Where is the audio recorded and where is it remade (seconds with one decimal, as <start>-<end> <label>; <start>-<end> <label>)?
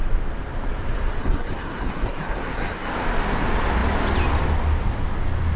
0.0-1.2 recorded; 1.2-2.9 remade; 2.9-5.6 recorded